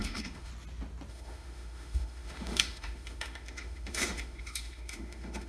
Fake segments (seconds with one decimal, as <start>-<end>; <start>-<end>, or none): 0.0-0.5; 1.1-5.5